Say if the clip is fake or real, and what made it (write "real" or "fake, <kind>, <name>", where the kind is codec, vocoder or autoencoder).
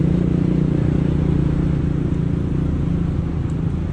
real